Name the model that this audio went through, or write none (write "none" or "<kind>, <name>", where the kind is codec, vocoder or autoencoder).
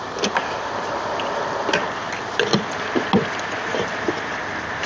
none